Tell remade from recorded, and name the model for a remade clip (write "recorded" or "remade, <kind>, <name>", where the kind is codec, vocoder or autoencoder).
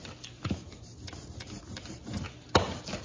recorded